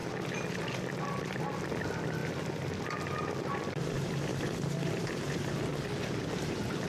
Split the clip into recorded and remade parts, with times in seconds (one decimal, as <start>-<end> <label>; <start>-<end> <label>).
0.0-5.7 recorded; 5.7-6.5 remade; 6.5-6.9 recorded